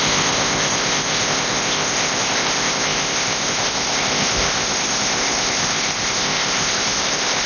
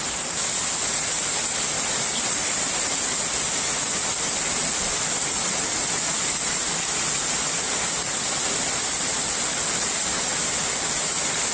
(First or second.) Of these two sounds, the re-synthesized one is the first